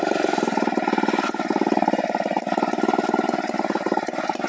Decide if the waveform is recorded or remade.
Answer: recorded